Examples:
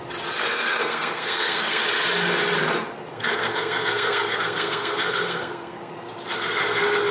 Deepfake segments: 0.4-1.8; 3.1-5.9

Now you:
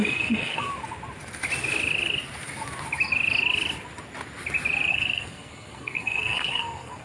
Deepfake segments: 0.0-0.7; 4.9-7.0

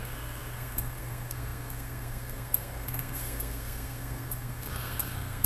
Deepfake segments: 0.0-5.5

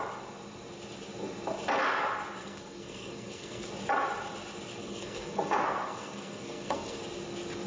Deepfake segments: 2.4-3.7; 4.8-7.0

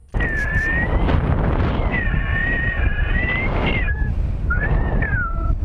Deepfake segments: none